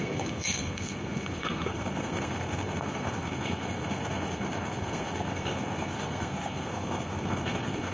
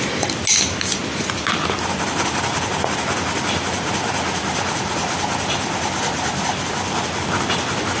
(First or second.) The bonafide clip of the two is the second